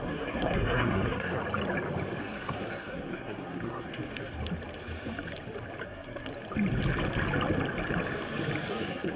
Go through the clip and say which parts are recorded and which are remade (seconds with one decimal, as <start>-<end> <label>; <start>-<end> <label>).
0.0-1.4 remade; 1.4-2.2 recorded; 2.2-3.9 remade; 3.9-5.8 recorded; 5.8-6.3 remade; 6.3-8.7 recorded; 8.7-9.2 remade